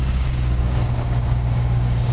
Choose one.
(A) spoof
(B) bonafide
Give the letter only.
A